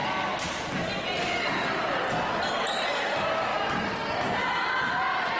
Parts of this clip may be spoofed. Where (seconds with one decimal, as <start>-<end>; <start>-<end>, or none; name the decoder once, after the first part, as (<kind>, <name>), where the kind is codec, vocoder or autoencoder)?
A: none